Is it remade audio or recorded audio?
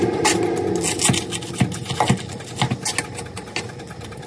recorded